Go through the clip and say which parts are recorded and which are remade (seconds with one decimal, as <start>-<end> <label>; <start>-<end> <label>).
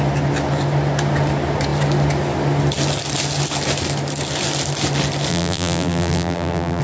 0.0-5.3 recorded; 5.3-6.8 remade